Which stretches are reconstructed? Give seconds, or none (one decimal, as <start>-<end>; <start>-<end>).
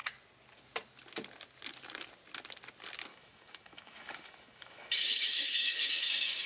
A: 3.1-6.5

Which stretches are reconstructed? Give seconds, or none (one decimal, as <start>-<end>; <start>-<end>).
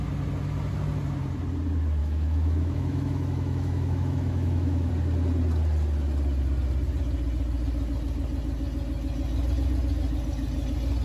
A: 2.0-4.9